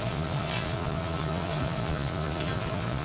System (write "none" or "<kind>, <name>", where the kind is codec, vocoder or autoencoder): vocoder, Vocos